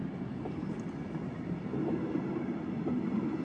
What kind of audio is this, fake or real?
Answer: real